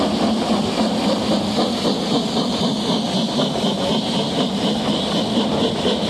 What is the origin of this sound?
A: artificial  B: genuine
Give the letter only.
B